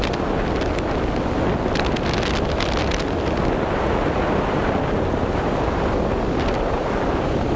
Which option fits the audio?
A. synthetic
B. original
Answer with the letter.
B